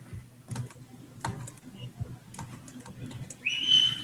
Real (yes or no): yes